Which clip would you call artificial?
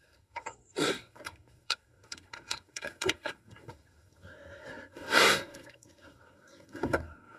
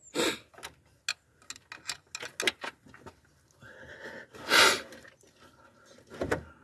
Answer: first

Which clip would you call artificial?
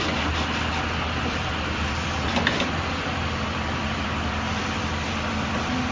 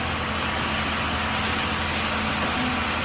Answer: first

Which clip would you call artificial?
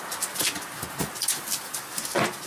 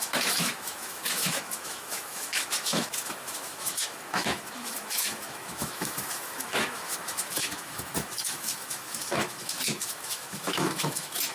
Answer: second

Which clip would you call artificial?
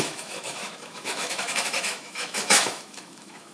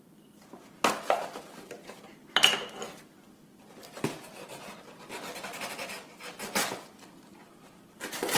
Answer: first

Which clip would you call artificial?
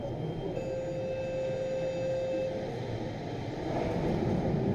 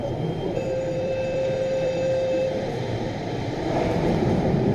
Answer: second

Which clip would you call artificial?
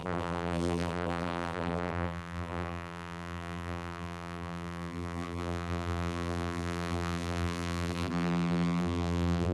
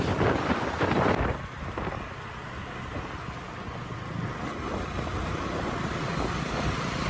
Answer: first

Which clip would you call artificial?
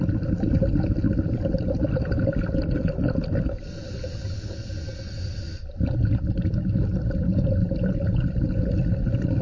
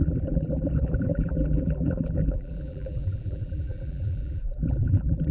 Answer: second